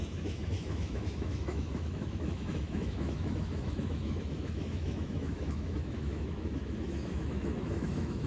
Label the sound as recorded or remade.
remade